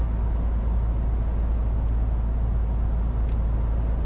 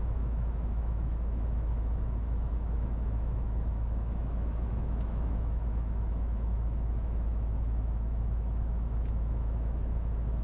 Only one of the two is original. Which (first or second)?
first